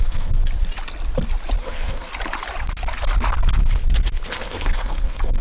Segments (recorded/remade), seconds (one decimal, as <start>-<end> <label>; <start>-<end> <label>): 0.0-0.4 remade; 0.4-1.6 recorded; 1.6-2.1 remade; 2.1-4.3 recorded; 4.3-5.4 remade